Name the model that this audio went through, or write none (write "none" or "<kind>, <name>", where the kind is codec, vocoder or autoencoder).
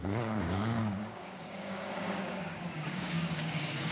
codec, DAC